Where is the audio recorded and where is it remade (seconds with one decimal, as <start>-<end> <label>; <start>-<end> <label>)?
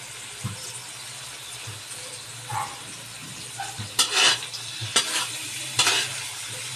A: 0.0-3.2 recorded; 3.2-5.9 remade; 5.9-6.8 recorded